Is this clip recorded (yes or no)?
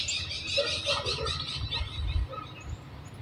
yes